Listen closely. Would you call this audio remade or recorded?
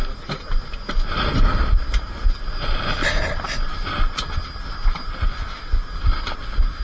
recorded